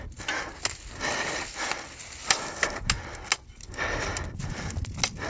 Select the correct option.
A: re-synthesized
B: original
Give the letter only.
B